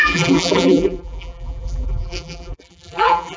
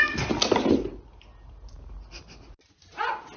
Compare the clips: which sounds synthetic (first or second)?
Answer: first